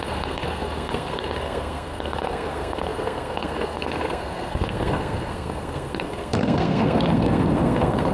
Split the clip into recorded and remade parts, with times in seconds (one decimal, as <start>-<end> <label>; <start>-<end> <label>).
0.0-8.1 remade